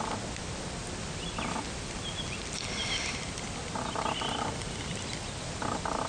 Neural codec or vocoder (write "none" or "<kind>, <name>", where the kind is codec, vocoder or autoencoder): none